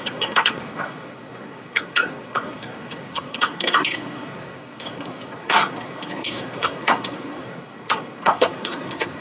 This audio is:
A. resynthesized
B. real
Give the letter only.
A